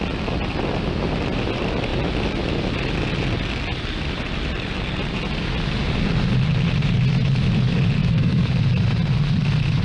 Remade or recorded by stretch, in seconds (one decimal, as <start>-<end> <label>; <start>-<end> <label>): 0.0-8.0 recorded; 8.0-8.5 remade; 8.5-9.8 recorded